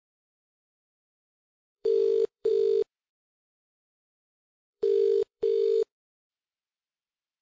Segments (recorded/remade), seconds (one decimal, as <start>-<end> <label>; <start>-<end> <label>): 0.0-2.5 remade; 2.5-3.1 recorded; 3.1-6.3 remade; 6.3-7.4 recorded